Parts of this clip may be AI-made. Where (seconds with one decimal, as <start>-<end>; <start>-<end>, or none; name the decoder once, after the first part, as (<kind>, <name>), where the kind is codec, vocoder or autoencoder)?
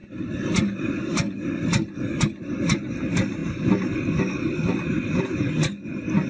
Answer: 0.0-3.4 (vocoder, BigVGAN v2); 5.2-6.3